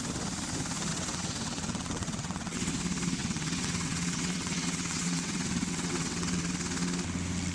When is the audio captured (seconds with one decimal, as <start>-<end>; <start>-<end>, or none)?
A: 0.0-0.9; 2.7-3.2; 6.5-7.5